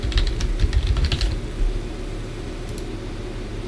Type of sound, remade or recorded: recorded